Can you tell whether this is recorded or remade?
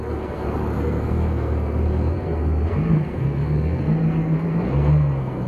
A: remade